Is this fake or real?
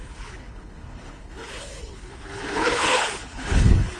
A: fake